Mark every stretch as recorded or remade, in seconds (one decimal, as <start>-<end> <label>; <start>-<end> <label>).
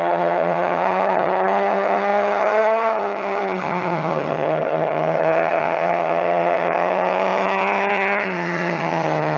0.0-9.4 remade